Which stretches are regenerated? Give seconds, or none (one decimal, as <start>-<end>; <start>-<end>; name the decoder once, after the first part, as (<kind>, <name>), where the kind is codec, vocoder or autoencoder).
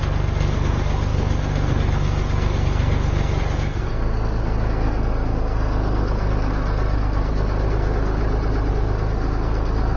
0.0-8.2 (codec, SNAC); 8.7-10.0